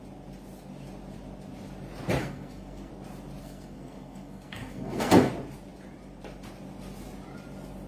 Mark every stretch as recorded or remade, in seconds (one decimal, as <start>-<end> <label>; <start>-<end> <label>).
0.0-2.2 recorded; 2.2-2.9 remade; 2.9-3.4 recorded; 3.4-5.3 remade; 5.3-7.9 recorded